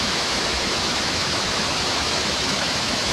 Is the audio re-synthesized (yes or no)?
yes